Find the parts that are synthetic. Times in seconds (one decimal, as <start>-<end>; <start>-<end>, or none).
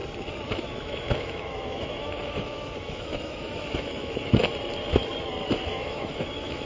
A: 0.5-4.4; 5.7-6.7